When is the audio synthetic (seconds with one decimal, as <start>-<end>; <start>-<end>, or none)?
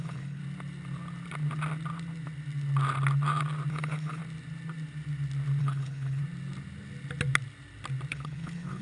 0.0-0.4; 3.7-4.2; 5.6-6.2; 8.1-8.8